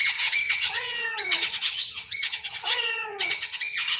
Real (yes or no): no